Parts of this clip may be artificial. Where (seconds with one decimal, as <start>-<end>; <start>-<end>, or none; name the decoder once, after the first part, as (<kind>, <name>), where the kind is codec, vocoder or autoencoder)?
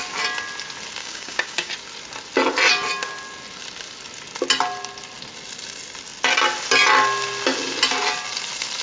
1.0-1.7 (codec, DAC)